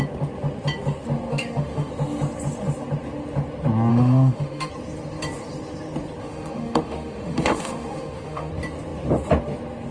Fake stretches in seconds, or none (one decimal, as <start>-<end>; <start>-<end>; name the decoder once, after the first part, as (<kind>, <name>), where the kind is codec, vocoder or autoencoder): 1.3-1.9 (autoencoder, DAC-VAE); 3.9-4.7; 6.2-8.5